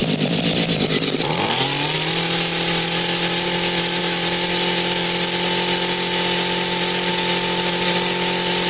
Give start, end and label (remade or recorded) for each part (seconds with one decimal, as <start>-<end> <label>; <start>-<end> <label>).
0.0-8.7 recorded